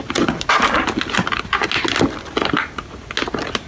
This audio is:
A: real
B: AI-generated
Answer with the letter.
A